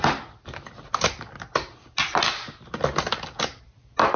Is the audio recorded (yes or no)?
yes